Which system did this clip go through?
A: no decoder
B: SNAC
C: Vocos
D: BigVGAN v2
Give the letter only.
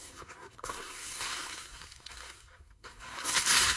B